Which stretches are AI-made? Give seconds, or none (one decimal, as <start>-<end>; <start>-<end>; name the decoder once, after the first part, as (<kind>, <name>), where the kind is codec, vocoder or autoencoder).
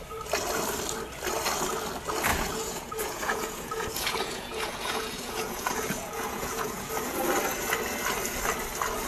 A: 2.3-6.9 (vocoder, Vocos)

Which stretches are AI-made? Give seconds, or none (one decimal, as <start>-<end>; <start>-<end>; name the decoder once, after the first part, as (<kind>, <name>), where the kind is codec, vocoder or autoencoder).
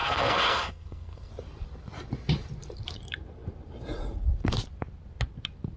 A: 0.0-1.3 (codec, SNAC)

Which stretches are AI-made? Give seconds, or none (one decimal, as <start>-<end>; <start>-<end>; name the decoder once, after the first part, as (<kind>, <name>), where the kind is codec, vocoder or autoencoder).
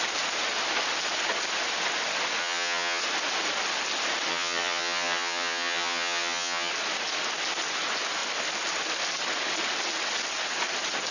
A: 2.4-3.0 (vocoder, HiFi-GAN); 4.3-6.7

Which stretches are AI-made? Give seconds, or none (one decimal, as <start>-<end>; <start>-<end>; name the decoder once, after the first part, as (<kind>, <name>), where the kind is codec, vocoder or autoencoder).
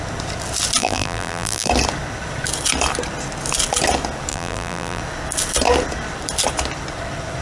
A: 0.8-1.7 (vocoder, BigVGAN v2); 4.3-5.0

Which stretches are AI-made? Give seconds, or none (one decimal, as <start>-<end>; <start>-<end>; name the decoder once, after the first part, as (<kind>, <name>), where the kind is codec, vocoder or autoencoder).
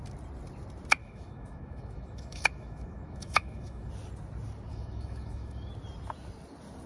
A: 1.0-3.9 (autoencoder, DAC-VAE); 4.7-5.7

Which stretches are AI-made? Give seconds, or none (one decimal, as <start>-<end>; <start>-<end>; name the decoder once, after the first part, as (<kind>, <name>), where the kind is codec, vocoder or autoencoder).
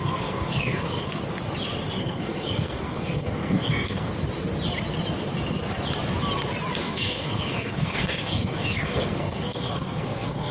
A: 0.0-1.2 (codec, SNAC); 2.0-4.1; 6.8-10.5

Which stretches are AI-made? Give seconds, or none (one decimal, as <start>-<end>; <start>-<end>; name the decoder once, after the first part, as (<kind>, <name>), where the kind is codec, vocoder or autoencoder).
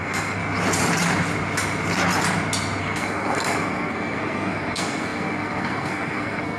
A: 0.0-0.4 (codec, SNAC); 2.8-6.6